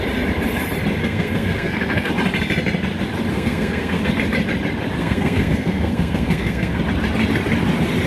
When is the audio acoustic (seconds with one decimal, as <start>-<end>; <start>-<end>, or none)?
0.0-1.0; 2.1-3.3; 4.1-5.0; 6.8-8.1